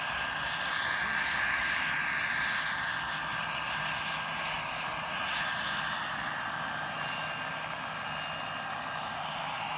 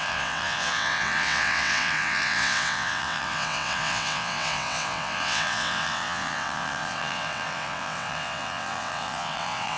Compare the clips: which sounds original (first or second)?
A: first